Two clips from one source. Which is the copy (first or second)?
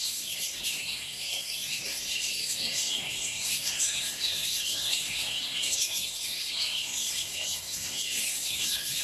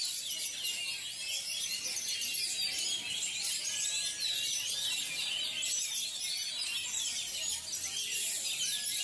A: first